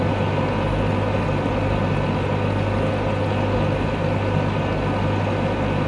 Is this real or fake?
real